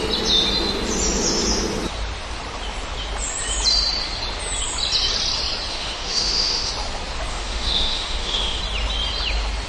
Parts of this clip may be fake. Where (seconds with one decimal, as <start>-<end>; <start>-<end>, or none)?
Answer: 5.7-6.7; 7.3-8.6

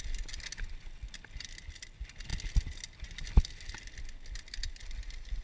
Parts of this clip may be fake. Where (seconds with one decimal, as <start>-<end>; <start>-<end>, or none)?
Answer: none

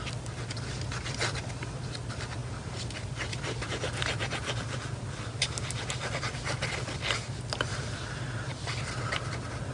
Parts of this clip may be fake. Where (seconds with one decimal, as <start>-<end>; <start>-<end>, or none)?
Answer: none

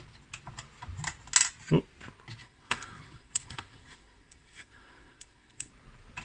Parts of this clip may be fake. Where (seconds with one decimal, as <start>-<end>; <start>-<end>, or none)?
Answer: 2.4-5.7

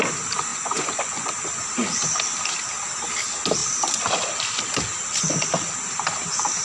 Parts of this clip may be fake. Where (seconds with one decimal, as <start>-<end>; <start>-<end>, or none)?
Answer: 0.5-1.3

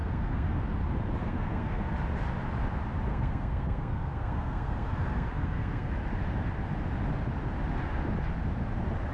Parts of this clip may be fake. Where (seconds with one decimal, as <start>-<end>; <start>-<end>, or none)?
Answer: 0.0-0.5; 1.2-1.9; 3.1-5.9

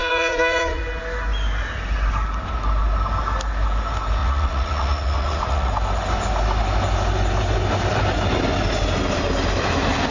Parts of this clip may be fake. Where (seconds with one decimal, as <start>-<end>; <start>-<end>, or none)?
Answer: 0.0-0.8; 4.2-5.7

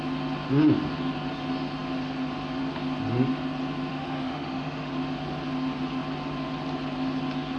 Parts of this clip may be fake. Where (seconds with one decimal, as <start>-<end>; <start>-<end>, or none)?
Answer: 3.9-4.9